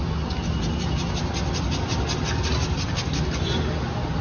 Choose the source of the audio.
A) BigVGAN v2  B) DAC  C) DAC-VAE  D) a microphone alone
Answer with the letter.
D